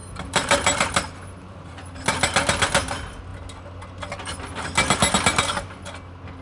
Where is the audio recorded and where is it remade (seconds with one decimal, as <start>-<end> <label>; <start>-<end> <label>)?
0.0-1.9 remade; 1.9-6.4 recorded